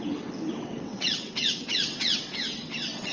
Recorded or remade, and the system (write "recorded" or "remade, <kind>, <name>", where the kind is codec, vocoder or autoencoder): remade, vocoder, WaveNeXt